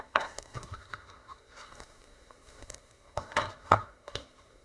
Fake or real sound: fake